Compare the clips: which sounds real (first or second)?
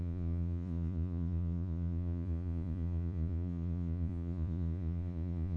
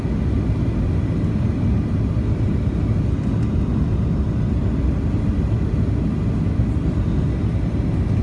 second